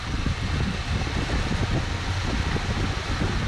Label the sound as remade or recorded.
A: recorded